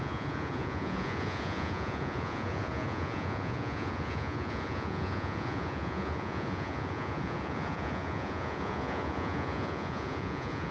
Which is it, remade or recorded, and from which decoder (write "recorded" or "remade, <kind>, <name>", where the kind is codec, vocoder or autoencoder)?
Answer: remade, vocoder, Vocos